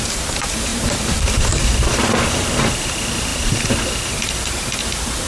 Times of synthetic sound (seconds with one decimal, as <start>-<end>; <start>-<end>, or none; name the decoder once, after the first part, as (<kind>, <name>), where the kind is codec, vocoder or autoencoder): 0.0-5.3 (vocoder, BigVGAN v2)